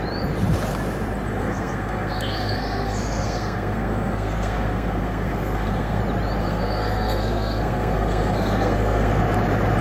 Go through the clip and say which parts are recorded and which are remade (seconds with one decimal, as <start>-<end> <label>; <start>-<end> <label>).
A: 0.0-1.4 recorded; 1.4-6.0 remade; 6.0-6.4 recorded; 6.4-9.2 remade; 9.2-9.8 recorded